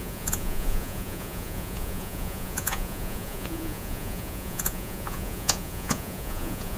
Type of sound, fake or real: fake